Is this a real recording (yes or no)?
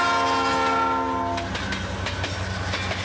yes